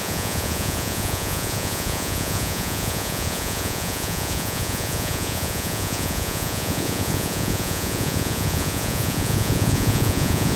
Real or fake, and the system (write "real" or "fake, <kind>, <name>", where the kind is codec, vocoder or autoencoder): fake, vocoder, Vocos